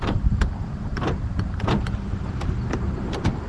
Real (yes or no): no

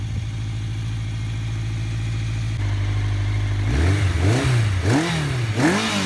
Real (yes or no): yes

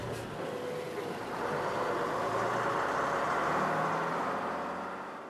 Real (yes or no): yes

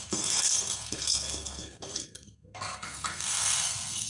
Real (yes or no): no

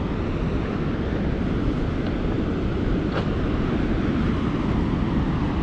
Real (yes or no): yes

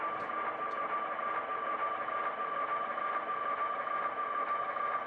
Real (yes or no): yes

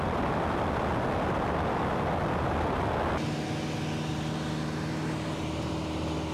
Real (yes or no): yes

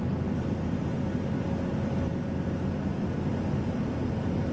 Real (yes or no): yes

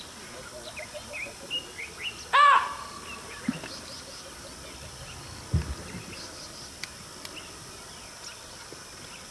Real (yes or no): yes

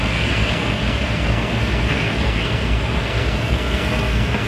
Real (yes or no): no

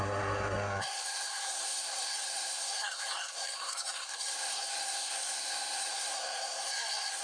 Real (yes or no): no